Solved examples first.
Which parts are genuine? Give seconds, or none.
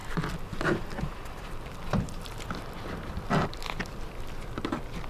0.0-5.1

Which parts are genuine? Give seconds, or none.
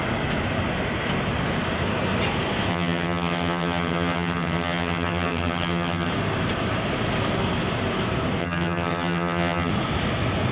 0.0-2.7; 6.1-8.4; 9.7-10.5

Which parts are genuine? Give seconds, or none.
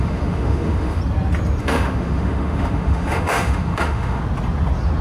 1.0-1.6; 4.2-5.0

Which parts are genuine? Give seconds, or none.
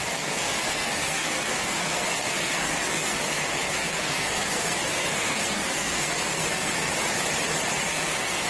6.9-7.8